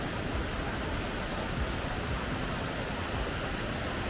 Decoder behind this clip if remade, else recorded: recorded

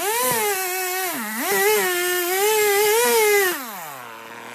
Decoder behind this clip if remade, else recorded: recorded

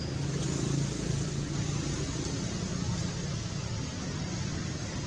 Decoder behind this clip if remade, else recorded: recorded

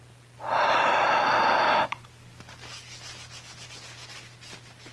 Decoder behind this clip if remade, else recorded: recorded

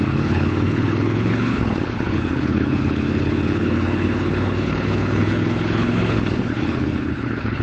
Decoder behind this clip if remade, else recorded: remade, codec, HILCodec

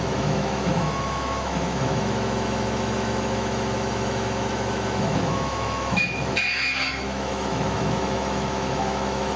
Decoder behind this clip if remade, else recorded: remade, autoencoder, DAC-VAE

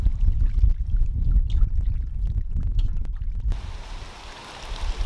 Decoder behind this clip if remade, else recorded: recorded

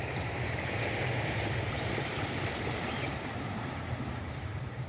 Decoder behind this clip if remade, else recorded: remade, vocoder, BigVGAN v2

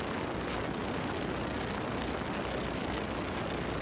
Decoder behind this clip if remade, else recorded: recorded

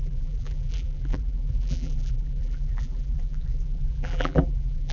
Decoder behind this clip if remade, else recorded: remade, vocoder, BigVGAN v2